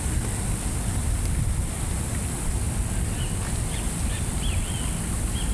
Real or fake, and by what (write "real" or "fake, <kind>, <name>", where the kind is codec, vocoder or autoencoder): real